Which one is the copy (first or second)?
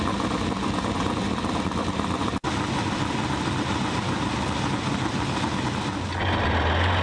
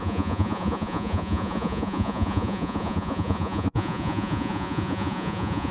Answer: second